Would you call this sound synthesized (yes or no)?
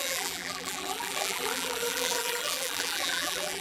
yes